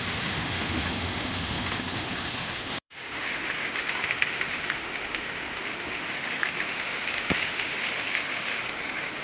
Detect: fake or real fake